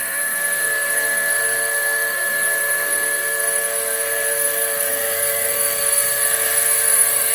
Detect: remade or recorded remade